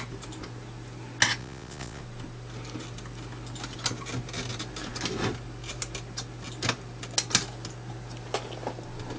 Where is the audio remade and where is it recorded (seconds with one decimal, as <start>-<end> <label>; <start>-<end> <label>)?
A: 0.0-1.4 recorded; 1.4-2.0 remade; 2.0-9.2 recorded